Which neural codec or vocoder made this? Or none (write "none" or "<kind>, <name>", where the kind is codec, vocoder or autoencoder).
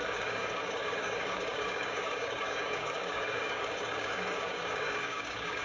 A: codec, DAC